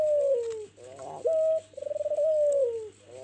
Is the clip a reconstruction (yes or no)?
no